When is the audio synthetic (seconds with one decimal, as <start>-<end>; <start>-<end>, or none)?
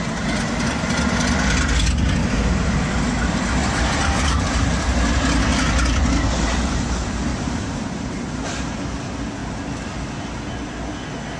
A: 2.2-2.9; 3.6-4.8; 7.3-8.5